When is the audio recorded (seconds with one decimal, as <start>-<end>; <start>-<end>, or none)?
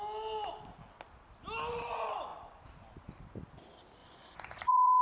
0.0-4.0